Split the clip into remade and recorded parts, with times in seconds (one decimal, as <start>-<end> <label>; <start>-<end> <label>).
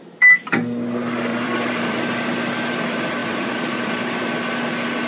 0.0-1.3 recorded; 1.3-2.1 remade; 2.1-3.2 recorded; 3.2-4.4 remade; 4.4-5.1 recorded